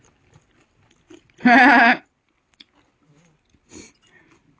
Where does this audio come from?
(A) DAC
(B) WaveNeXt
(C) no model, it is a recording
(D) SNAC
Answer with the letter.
C